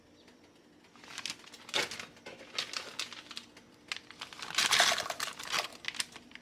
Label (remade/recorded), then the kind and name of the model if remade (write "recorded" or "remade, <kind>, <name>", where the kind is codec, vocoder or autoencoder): recorded